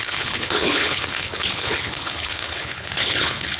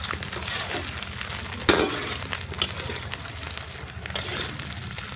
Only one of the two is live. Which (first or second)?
second